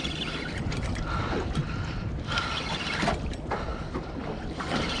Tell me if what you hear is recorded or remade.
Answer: recorded